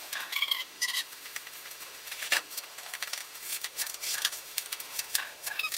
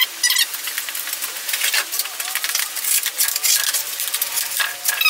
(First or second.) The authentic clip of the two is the second